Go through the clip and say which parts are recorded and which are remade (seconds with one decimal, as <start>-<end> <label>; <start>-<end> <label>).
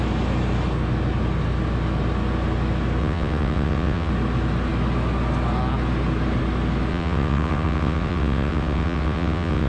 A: 0.0-3.0 recorded; 3.0-4.1 remade; 4.1-6.9 recorded; 6.9-9.7 remade